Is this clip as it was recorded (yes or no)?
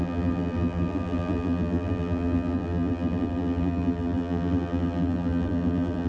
no